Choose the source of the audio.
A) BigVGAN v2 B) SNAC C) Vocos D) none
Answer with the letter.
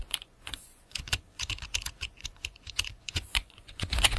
C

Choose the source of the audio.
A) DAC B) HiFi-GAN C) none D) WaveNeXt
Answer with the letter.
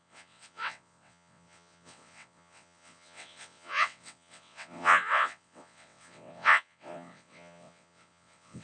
D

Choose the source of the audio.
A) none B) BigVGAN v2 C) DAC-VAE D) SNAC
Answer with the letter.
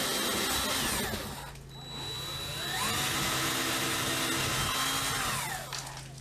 A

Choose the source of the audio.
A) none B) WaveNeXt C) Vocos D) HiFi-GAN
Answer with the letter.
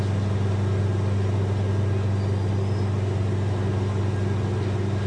A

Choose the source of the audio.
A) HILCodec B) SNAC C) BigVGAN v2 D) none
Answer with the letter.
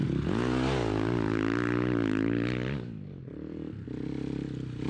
D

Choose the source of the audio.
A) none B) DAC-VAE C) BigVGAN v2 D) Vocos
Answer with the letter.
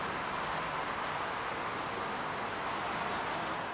A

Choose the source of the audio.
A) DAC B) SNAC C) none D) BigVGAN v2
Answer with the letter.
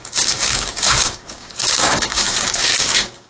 A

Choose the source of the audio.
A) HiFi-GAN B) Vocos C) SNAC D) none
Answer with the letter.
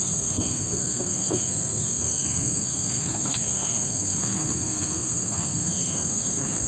C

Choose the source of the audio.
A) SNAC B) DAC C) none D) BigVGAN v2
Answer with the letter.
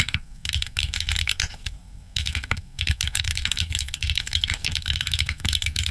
A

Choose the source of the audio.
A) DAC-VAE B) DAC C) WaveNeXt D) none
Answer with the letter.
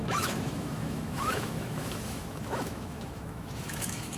A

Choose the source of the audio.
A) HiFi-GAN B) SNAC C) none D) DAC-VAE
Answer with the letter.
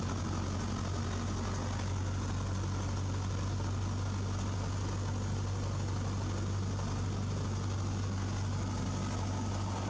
C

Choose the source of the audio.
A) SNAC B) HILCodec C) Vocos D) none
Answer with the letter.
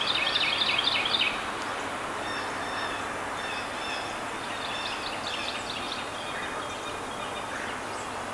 D